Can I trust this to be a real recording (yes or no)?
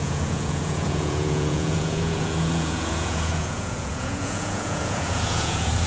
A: no